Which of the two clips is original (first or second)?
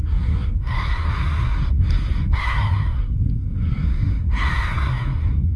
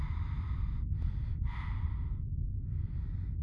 second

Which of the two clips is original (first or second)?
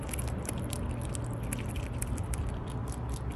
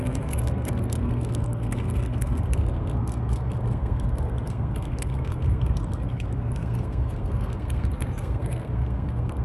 first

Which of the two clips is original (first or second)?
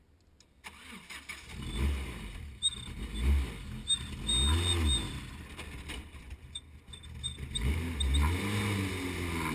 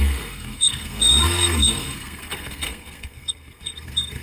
first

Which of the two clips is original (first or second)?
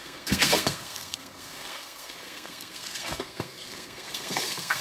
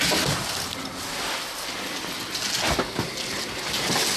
second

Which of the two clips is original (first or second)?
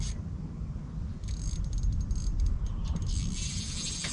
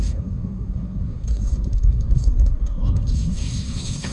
first